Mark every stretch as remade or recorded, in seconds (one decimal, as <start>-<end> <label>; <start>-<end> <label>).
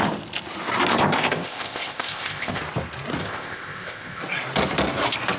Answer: 0.0-0.9 recorded; 0.9-2.6 remade; 2.6-3.2 recorded; 3.2-4.2 remade; 4.2-5.4 recorded